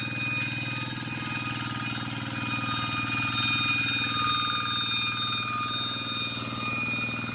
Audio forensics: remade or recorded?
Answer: recorded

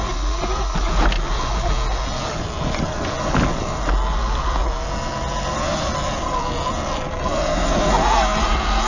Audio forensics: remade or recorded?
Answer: recorded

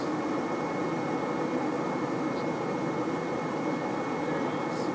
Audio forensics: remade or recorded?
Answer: recorded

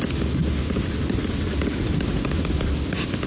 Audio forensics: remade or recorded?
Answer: recorded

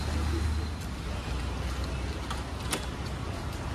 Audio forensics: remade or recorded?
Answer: recorded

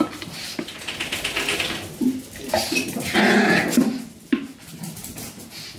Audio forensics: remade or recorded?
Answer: recorded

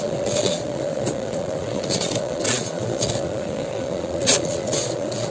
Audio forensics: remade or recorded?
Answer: remade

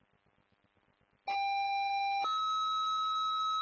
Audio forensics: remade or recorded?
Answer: recorded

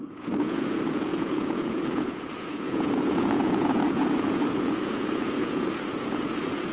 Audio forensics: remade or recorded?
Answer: remade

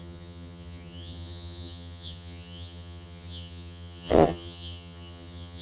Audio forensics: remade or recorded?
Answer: remade